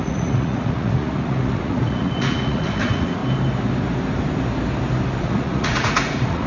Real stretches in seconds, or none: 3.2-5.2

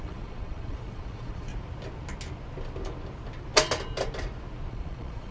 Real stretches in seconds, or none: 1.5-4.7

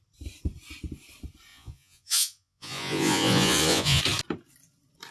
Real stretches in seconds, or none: 0.0-1.5; 4.0-5.1

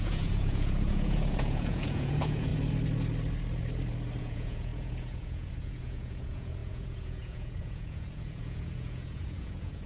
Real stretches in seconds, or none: 2.5-4.2

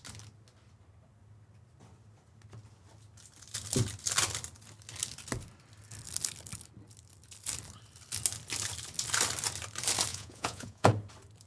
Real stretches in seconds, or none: 0.0-10.1; 10.9-11.5